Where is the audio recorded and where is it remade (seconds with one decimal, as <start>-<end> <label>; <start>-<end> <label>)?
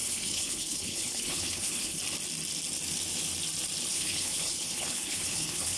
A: 0.0-2.0 remade; 2.0-3.9 recorded; 3.9-5.8 remade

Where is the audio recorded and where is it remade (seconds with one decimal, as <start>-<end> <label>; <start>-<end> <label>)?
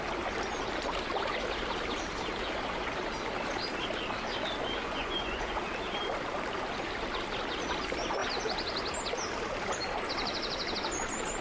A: 0.0-4.8 recorded; 4.8-5.5 remade; 5.5-11.4 recorded